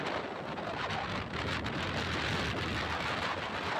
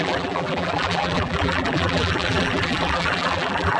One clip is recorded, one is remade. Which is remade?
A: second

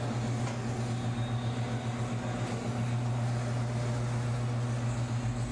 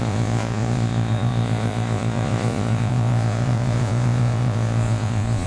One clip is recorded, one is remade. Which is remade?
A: second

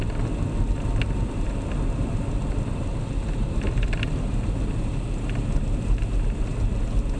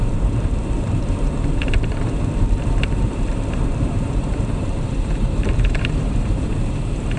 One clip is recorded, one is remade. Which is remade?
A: second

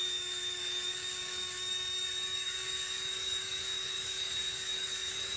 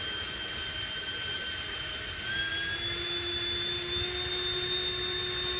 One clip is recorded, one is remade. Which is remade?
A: first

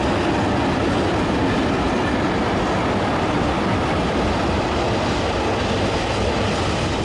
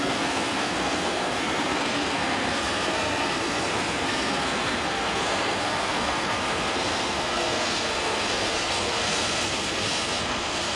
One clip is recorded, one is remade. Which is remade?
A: second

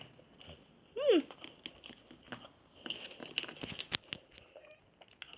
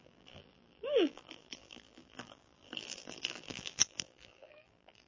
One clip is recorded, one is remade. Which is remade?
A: second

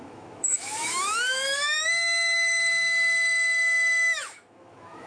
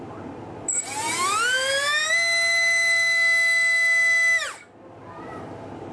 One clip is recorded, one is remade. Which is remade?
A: first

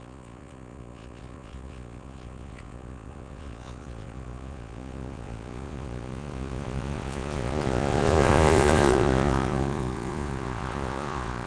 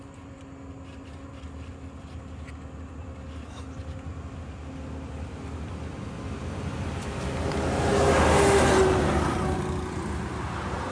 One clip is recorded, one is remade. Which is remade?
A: first